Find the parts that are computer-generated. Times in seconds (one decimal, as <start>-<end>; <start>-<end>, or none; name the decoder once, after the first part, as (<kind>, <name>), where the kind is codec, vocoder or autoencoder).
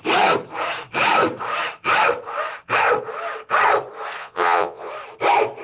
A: 4.2-4.9 (vocoder, Vocos)